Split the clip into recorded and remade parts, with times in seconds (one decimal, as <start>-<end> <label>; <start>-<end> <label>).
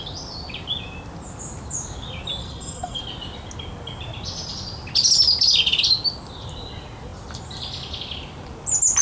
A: 0.0-2.4 recorded; 2.4-3.0 remade; 3.0-9.0 recorded